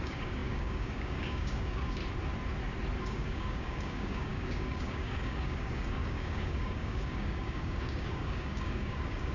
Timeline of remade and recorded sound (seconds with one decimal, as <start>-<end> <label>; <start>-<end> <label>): 0.0-2.0 remade; 2.0-3.0 recorded; 3.0-9.3 remade